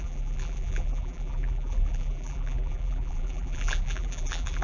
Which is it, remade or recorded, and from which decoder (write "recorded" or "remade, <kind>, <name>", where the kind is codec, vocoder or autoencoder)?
remade, vocoder, BigVGAN v2